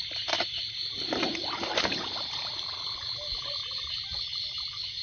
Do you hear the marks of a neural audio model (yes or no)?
no